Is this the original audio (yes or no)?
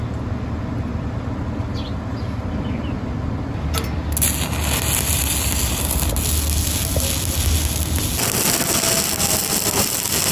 yes